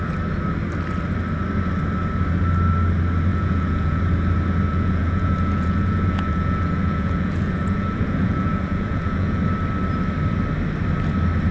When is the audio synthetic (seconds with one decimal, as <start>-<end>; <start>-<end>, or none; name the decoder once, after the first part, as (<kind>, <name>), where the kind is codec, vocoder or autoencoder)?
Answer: 3.3-4.0 (vocoder, Vocos); 4.7-9.4